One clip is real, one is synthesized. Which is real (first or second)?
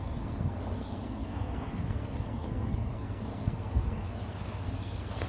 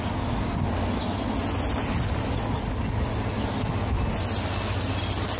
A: second